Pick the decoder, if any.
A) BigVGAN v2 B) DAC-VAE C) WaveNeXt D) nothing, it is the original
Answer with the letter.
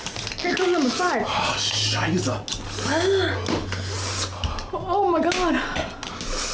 D